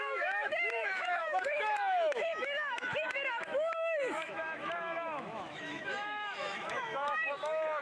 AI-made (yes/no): yes